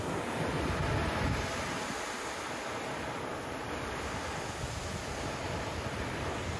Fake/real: fake